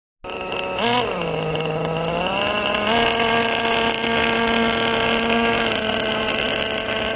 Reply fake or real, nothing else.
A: real